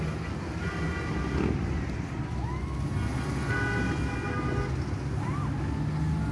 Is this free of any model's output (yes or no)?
yes